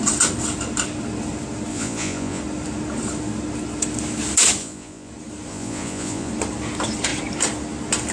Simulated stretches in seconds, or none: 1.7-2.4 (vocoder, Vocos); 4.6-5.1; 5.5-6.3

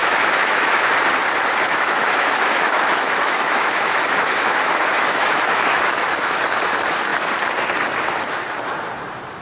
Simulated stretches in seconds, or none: 0.0-0.9 (autoencoder, DAC-VAE); 1.7-6.4

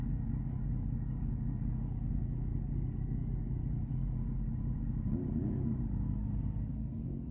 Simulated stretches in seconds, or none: 0.0-2.5 (codec, DAC); 3.0-3.9; 6.7-7.3

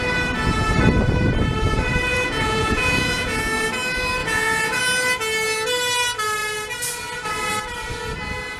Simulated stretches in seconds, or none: 2.1-3.4 (vocoder, Vocos); 4.2-4.8

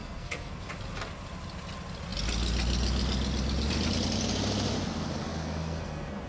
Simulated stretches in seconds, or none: 0.0-0.7 (codec, SNAC); 5.2-6.3

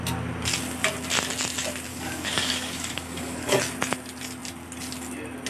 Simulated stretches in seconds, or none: 1.9-3.6 (codec, DAC)

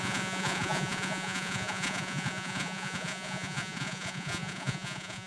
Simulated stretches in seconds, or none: 0.0-5.3 (vocoder, Vocos)